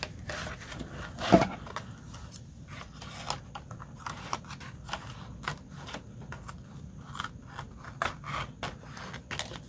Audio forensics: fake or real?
real